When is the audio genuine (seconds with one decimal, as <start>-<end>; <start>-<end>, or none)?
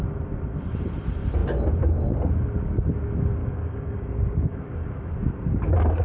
0.0-3.4; 4.6-6.0